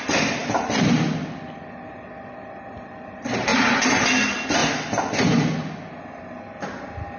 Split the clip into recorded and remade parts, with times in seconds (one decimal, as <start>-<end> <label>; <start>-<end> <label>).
0.0-7.2 recorded